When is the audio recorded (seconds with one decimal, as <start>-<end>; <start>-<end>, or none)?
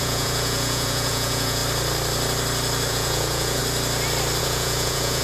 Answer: 1.6-2.9; 3.6-4.4